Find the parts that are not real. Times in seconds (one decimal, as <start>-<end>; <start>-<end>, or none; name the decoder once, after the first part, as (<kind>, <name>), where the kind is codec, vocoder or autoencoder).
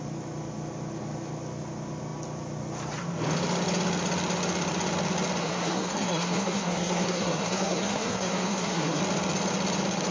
5.4-9.0 (codec, SNAC)